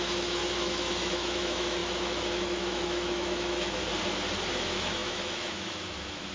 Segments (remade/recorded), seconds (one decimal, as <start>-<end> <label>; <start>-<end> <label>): 0.0-3.8 remade; 3.8-4.5 recorded; 4.5-6.3 remade